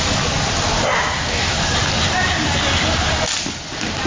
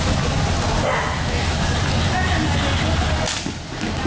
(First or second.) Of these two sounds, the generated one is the first